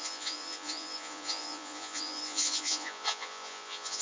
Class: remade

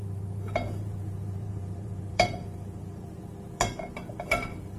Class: remade